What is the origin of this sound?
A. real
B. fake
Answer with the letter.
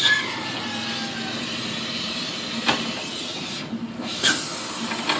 A